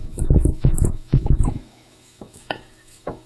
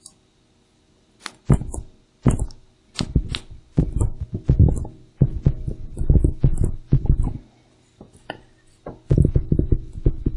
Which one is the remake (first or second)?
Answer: first